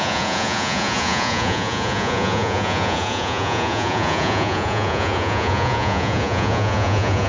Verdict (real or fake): fake